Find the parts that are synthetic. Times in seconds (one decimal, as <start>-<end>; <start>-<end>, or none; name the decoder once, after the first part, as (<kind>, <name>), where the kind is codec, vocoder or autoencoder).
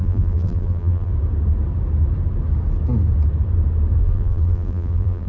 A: 0.0-1.1 (vocoder, BigVGAN v2); 4.0-5.3